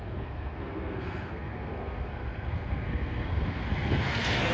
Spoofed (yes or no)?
yes